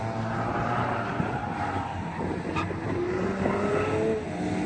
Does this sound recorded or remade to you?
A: recorded